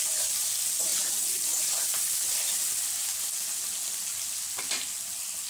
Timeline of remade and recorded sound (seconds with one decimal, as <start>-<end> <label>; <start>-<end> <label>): 0.0-5.5 recorded